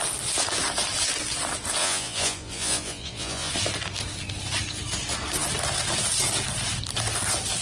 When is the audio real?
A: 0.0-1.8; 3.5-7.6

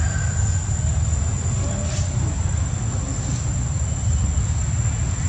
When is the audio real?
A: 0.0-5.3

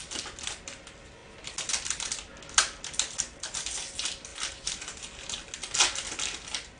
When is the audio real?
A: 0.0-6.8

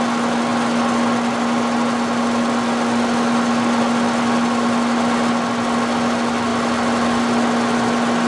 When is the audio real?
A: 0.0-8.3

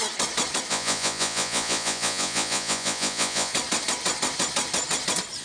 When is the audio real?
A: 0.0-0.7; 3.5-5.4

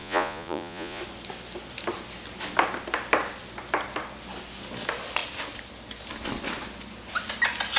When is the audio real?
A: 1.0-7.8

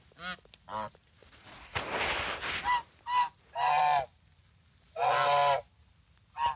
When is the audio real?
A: 0.0-1.2; 1.8-6.6